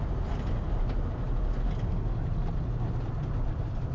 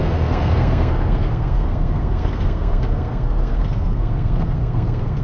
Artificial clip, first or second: second